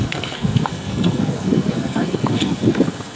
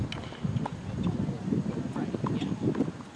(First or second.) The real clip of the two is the second